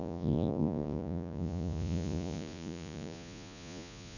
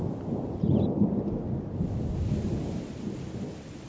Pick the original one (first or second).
second